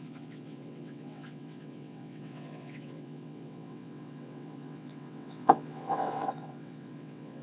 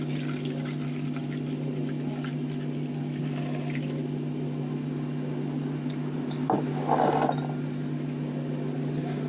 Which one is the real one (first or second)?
second